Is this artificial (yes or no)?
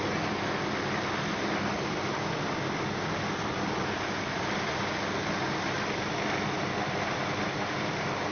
no